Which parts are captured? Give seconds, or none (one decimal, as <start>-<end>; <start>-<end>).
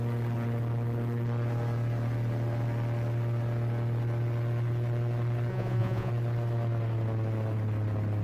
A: 0.0-5.5; 6.1-8.2